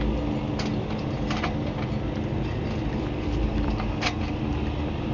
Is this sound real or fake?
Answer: real